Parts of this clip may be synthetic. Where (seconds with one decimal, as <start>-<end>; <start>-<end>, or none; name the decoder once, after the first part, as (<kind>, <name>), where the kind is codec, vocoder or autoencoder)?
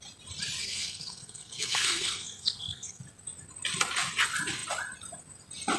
0.6-3.0 (codec, SNAC)